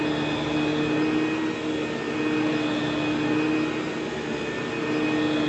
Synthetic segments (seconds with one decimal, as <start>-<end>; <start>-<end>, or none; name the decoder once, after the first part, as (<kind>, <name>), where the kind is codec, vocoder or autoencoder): none